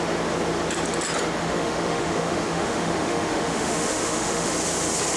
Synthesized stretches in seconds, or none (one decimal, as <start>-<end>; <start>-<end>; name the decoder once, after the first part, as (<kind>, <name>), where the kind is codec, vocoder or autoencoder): 1.4-4.5 (autoencoder, DAC-VAE)